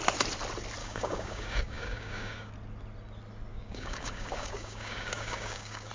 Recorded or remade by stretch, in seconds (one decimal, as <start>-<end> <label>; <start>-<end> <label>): 0.0-0.8 recorded; 0.8-2.5 remade; 2.5-3.5 recorded; 3.5-5.9 remade